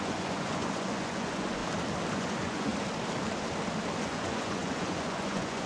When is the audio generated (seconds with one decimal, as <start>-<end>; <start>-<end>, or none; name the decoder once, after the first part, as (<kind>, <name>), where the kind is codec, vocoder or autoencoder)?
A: 0.0-1.6 (vocoder, Vocos); 2.1-2.7; 4.0-5.7